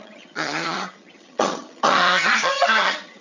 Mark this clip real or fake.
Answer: fake